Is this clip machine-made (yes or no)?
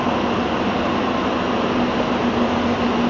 no